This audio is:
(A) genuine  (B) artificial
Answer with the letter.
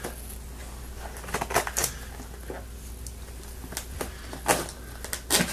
A